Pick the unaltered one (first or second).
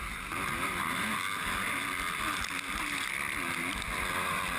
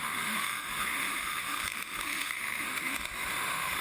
first